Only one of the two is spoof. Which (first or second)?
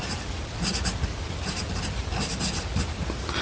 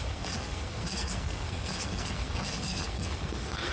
second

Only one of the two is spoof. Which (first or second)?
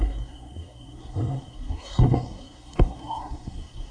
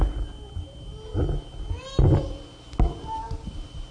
first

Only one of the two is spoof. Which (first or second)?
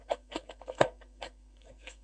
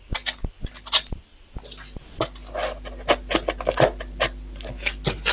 first